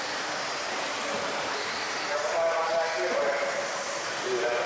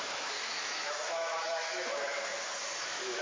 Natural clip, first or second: first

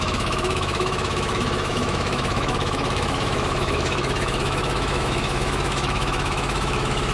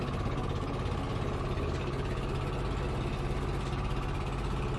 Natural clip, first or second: second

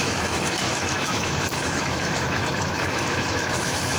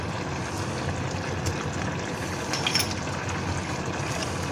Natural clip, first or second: second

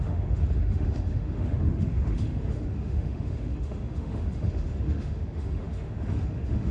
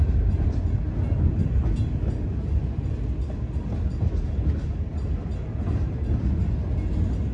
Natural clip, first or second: second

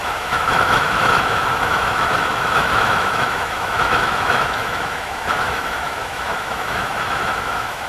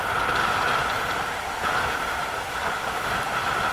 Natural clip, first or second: second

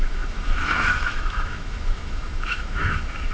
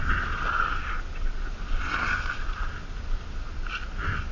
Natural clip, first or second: second